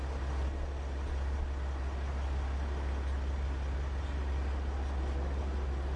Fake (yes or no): no